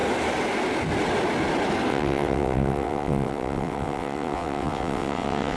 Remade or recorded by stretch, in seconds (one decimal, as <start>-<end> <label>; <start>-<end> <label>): 0.0-1.9 recorded; 1.9-5.6 remade